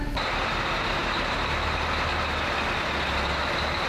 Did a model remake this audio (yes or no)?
no